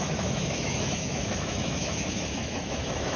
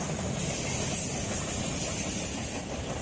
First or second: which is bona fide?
second